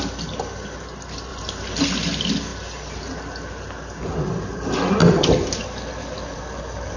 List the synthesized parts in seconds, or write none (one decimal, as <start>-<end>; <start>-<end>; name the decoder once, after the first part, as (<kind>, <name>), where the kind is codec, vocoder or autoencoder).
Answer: 1.3-1.8 (vocoder, BigVGAN v2)